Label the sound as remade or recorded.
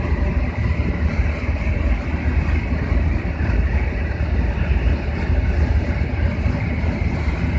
recorded